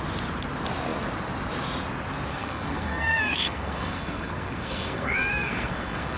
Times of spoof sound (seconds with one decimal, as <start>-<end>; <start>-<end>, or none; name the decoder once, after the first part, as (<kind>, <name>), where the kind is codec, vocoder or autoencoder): 2.3-6.2 (codec, SNAC)